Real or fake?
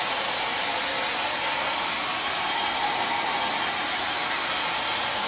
real